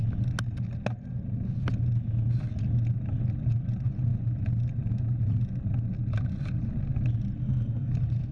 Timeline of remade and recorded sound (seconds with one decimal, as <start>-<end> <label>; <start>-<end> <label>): 0.0-7.4 recorded; 7.4-7.9 remade; 7.9-8.3 recorded